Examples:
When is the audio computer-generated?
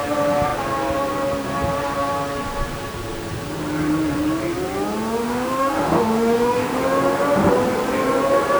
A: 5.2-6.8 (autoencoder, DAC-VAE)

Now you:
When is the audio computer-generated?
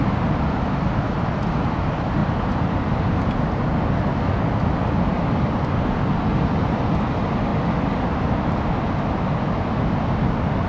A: none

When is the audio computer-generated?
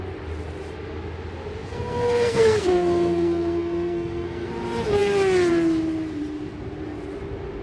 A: 1.6-4.5 (codec, SNAC)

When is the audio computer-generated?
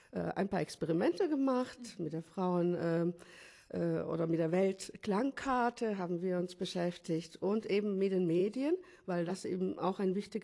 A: none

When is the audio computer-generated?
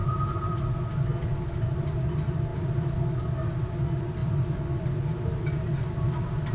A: 0.0-0.5 (vocoder, BigVGAN v2); 2.5-3.0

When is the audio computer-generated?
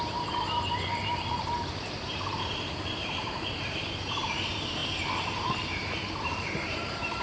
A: 0.0-7.2 (vocoder, BigVGAN v2)